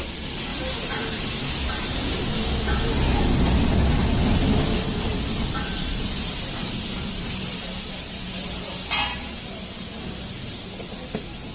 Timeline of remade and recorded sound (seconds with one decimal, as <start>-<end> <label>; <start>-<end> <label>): 0.0-0.5 recorded; 0.5-2.2 remade; 2.2-3.1 recorded; 3.1-3.6 remade; 3.6-5.1 recorded; 5.1-9.9 remade; 9.9-11.5 recorded